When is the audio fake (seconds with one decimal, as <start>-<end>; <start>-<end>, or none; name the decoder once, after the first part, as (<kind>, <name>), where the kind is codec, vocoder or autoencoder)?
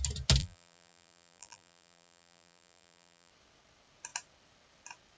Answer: 0.4-3.3 (vocoder, BigVGAN v2)